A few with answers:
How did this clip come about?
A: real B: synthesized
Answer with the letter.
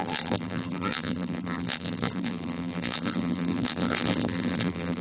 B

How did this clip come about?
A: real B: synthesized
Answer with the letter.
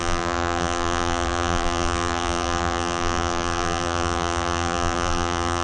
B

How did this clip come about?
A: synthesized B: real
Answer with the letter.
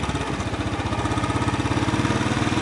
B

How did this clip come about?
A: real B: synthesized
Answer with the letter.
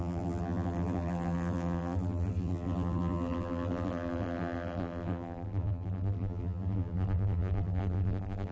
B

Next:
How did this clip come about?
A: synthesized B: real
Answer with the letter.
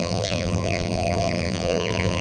A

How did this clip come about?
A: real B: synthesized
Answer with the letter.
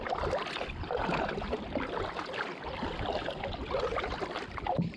A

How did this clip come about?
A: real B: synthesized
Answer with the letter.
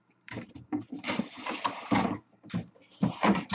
B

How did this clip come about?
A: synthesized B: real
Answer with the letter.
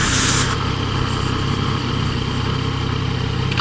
B